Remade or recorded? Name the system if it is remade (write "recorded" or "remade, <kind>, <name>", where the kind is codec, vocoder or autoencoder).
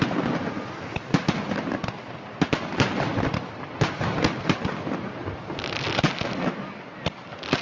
recorded